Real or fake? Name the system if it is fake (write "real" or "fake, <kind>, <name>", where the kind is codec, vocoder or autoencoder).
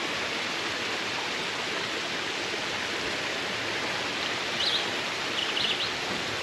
real